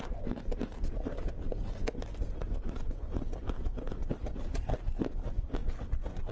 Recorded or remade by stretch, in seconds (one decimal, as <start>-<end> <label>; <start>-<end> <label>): 0.0-6.3 recorded